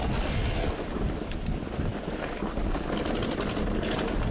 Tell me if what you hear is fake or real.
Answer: real